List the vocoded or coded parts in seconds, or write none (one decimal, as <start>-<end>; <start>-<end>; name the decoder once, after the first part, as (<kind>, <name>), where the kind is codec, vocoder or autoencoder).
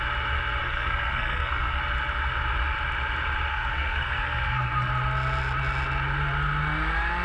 0.6-1.8 (codec, SNAC); 3.5-4.9